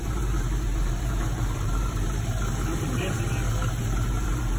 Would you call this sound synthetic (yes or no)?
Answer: yes